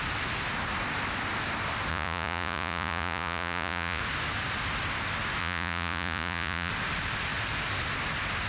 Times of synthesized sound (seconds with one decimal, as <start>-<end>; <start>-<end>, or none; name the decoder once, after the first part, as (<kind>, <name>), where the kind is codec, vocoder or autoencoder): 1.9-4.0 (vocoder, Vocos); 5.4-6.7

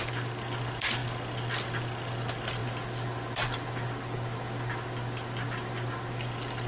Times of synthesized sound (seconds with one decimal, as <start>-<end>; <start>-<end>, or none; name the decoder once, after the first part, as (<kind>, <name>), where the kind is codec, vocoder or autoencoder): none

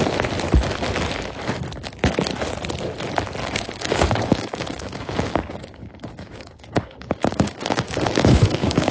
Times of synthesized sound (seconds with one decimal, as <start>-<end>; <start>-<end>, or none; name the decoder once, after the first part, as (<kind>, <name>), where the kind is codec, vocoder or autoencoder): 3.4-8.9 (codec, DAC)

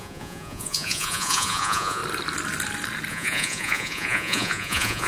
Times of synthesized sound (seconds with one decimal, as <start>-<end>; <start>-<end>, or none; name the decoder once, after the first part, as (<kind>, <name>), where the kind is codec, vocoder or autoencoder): 0.0-2.0 (vocoder, Vocos); 3.1-5.1

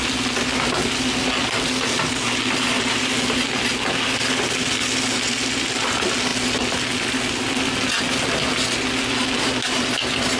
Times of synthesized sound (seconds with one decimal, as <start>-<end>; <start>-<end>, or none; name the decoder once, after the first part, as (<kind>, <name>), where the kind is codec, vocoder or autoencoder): none

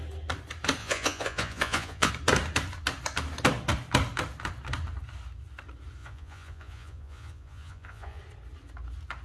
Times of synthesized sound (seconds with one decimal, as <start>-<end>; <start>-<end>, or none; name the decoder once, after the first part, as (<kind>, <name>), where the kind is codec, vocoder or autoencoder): 0.8-2.1 (vocoder, Vocos); 6.0-8.2

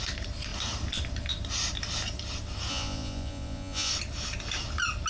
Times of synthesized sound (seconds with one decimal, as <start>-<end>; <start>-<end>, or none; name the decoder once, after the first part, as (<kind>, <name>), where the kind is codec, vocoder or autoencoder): 2.7-3.9 (vocoder, Vocos)